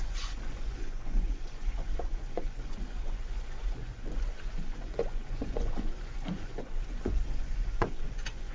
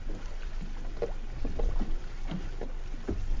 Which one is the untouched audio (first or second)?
second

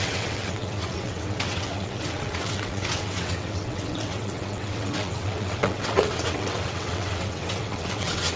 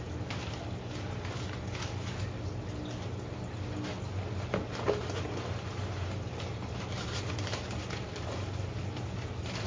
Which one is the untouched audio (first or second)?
second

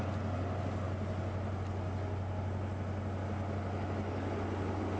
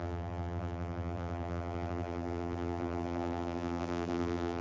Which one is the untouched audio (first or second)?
first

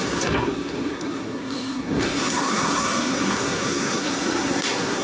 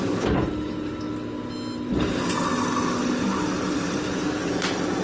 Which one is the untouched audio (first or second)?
second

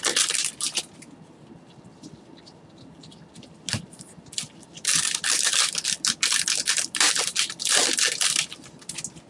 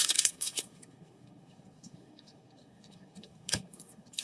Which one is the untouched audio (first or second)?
first